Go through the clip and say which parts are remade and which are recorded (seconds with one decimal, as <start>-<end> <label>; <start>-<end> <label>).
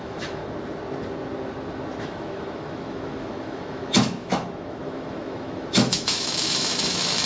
0.0-0.4 remade; 0.4-2.0 recorded; 2.0-7.3 remade